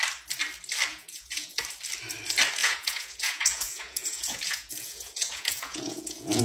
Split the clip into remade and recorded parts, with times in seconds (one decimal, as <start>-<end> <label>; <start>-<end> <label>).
0.0-0.9 recorded; 0.9-1.6 remade; 1.6-2.6 recorded; 2.6-6.4 remade